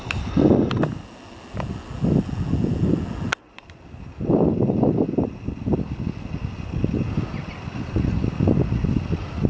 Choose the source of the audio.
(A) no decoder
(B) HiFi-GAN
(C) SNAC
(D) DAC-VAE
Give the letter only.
A